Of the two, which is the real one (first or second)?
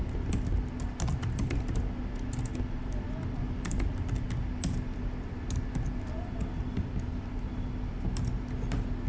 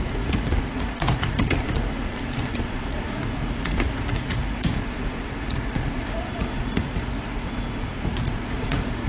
first